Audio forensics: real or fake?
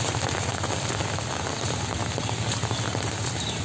real